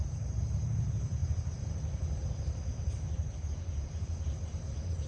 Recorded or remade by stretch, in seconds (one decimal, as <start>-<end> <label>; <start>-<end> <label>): 0.0-5.1 remade